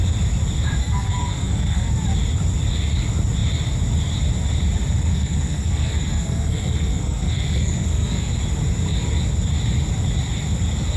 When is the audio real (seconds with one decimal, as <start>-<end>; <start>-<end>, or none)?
0.0-0.8; 1.9-5.1; 8.3-11.0